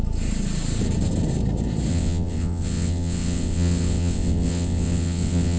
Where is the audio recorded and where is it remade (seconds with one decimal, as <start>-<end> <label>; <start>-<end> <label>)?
0.0-1.9 recorded; 1.9-5.6 remade